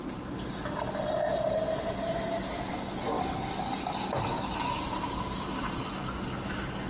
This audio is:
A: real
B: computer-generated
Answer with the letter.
A